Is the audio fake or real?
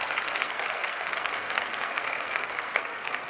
fake